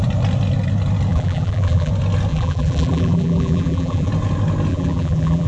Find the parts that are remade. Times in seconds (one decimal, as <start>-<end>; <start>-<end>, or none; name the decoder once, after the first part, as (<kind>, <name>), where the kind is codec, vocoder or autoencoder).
1.1-1.9 (vocoder, BigVGAN v2); 2.3-4.1; 4.7-5.5